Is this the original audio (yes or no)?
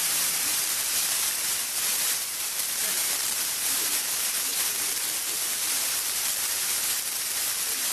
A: no